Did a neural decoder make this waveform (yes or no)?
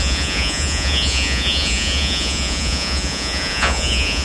yes